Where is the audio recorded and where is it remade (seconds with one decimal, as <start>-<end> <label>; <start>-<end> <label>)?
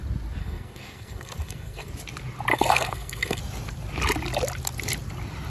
0.0-0.4 recorded; 0.4-1.9 remade; 1.9-2.5 recorded; 2.5-3.4 remade; 3.4-5.5 recorded